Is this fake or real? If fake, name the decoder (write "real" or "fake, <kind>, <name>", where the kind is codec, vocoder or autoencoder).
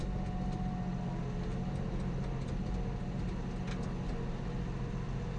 real